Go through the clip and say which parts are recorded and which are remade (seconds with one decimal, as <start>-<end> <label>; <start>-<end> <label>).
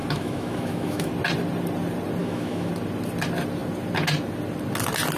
0.0-1.1 remade; 1.1-2.2 recorded; 2.2-2.7 remade; 2.7-5.2 recorded